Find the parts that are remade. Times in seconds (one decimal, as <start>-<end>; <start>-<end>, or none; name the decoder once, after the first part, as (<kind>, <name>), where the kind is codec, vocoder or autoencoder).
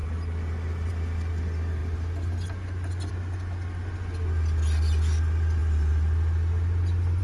none